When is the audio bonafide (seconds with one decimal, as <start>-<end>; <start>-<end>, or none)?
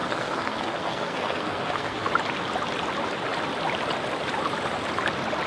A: 2.1-5.5